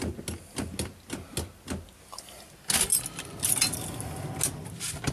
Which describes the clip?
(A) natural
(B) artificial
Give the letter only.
A